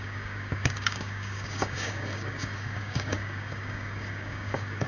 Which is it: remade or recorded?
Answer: remade